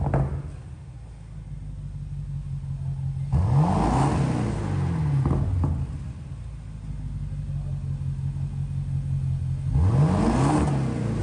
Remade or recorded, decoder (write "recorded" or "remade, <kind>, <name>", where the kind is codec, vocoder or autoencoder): recorded